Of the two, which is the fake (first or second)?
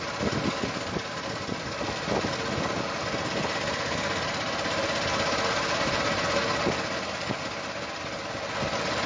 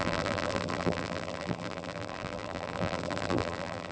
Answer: second